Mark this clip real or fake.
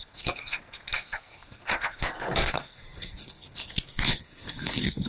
fake